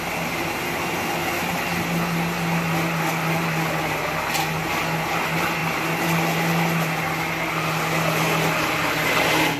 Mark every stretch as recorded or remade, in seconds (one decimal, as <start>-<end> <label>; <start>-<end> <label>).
0.0-9.6 recorded